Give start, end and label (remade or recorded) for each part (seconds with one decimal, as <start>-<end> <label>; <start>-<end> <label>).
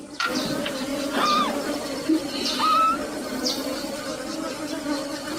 0.0-5.4 recorded